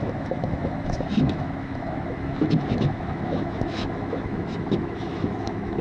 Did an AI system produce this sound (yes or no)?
yes